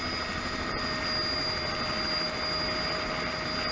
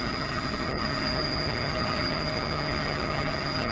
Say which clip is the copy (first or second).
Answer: second